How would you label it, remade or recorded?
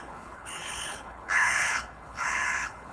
remade